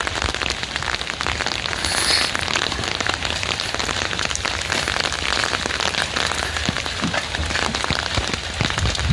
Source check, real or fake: real